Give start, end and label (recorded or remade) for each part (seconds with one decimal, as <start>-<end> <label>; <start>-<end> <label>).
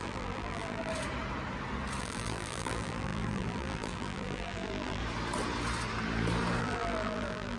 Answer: 0.0-0.9 remade; 0.9-2.0 recorded; 2.0-5.0 remade; 5.0-6.6 recorded; 6.6-7.6 remade